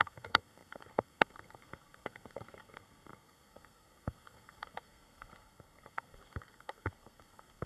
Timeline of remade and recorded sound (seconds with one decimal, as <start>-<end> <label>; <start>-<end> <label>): 0.0-7.7 remade